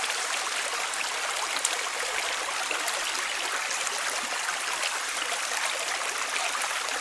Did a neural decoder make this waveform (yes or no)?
no